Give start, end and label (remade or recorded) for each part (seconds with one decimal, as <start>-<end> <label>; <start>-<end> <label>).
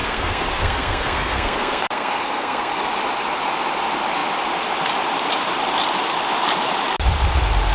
0.0-2.7 remade; 2.7-7.7 recorded